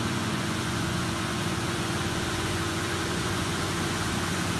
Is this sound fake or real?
fake